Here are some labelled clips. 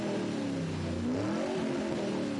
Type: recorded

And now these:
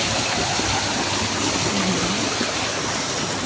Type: recorded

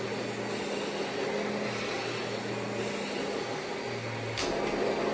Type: recorded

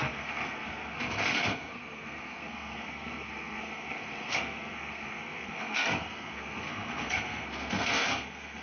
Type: remade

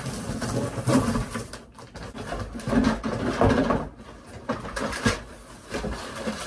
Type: recorded